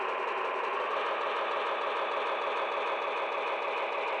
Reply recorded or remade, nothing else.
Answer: recorded